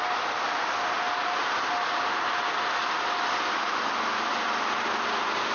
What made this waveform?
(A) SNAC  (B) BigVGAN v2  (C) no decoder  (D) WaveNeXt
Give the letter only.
C